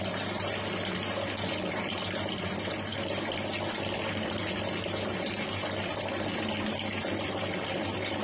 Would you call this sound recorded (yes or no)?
yes